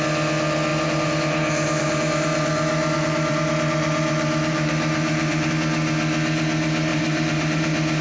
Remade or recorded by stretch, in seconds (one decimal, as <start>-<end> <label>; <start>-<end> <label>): 0.0-0.7 recorded; 0.7-5.5 remade; 5.5-6.9 recorded; 6.9-8.0 remade